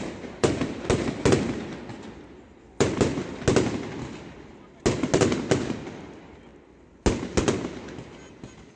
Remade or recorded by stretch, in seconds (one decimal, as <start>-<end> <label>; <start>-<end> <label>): 0.0-8.8 recorded